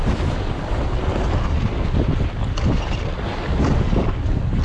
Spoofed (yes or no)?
no